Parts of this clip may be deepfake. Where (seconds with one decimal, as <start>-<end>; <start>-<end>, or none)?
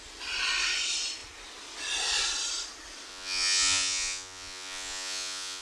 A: 3.1-5.6